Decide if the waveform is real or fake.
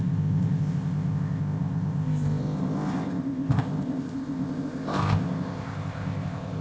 fake